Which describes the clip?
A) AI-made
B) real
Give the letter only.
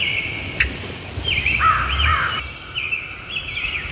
B